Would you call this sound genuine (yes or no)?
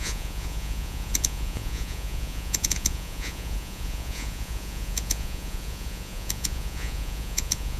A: no